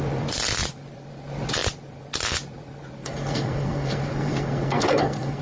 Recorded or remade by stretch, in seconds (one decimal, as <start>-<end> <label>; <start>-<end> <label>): 0.0-3.0 recorded; 3.0-5.4 remade